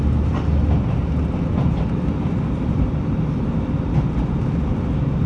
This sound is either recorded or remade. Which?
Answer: recorded